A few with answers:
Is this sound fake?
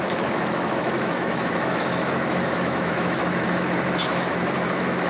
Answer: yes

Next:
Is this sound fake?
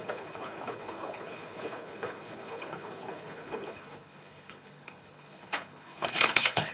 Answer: yes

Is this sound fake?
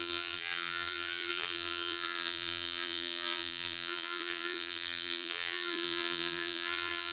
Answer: yes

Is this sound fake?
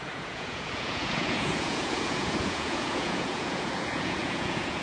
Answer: yes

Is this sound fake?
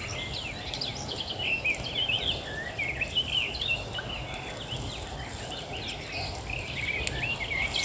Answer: no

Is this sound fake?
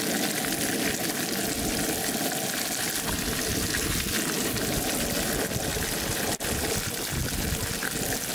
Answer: no